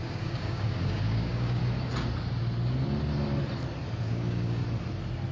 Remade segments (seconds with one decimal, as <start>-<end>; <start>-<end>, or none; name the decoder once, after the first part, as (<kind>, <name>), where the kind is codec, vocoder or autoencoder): 0.0-1.6 (codec, DAC); 4.0-4.6